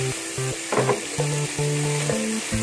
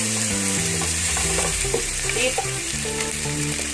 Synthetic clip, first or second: second